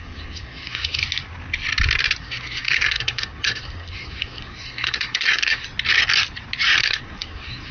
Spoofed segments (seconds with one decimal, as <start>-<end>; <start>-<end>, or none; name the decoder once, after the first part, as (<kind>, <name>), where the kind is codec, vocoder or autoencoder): 0.0-1.0 (codec, SNAC); 2.2-5.6; 6.8-7.7